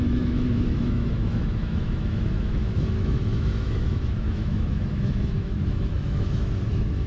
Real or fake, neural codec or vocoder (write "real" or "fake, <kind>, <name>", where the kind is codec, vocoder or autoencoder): fake, autoencoder, DAC-VAE